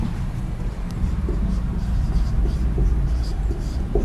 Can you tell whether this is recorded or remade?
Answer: remade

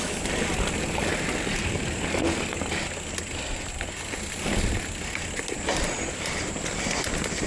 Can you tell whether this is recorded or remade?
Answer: recorded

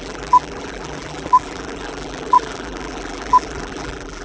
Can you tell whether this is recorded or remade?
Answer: remade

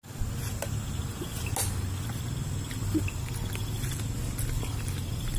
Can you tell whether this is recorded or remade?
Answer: recorded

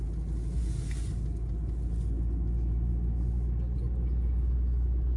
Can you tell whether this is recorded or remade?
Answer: recorded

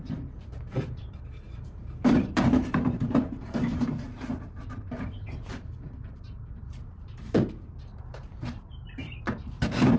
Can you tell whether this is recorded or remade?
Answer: remade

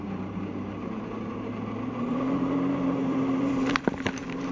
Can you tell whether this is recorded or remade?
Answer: remade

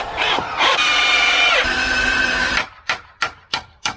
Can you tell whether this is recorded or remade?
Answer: remade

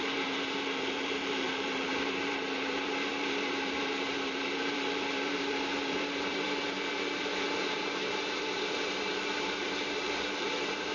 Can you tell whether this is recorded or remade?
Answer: remade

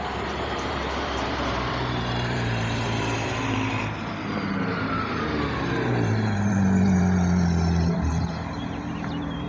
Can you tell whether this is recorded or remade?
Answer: remade